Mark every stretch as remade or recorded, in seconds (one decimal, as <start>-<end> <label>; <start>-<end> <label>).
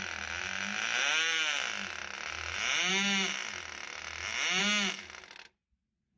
0.0-6.2 recorded